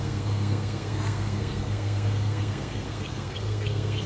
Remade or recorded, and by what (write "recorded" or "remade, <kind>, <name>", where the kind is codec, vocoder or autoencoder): remade, codec, SNAC